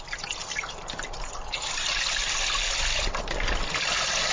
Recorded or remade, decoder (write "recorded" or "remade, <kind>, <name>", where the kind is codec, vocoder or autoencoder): recorded